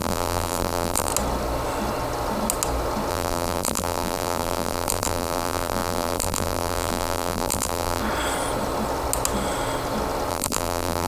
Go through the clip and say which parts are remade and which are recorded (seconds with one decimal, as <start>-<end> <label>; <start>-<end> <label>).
0.0-1.1 remade; 1.1-3.1 recorded; 3.1-8.0 remade; 8.0-10.3 recorded; 10.3-11.1 remade